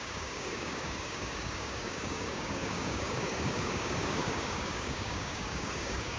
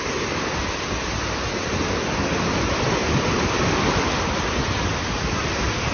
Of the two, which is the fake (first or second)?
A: first